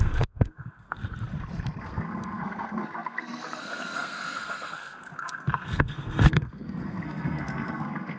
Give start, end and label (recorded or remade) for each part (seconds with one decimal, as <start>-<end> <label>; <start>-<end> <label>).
0.0-1.0 remade; 1.0-1.8 recorded; 1.8-8.2 remade